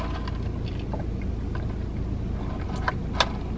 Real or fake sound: real